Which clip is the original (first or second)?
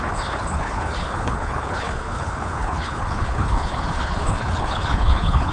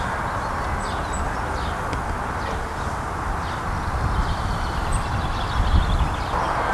second